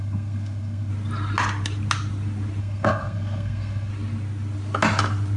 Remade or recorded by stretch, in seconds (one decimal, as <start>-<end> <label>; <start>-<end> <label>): 0.0-0.9 remade; 0.9-2.6 recorded; 2.6-3.9 remade; 3.9-5.4 recorded

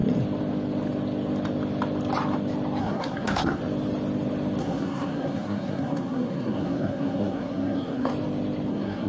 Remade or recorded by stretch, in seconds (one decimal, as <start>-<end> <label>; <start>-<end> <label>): 0.0-2.8 recorded; 2.8-3.6 remade; 3.6-4.6 recorded; 4.6-8.1 remade; 8.1-8.7 recorded; 8.7-9.1 remade

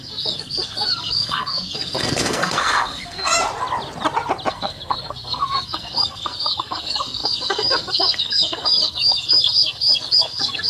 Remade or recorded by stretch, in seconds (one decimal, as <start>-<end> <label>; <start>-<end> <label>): 0.0-3.3 remade; 3.3-4.5 recorded; 4.5-10.7 remade

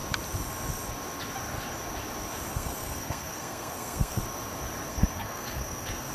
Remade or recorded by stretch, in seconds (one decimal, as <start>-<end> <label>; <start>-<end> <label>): 0.0-2.5 recorded; 2.5-4.2 remade; 4.2-4.9 recorded; 4.9-6.1 remade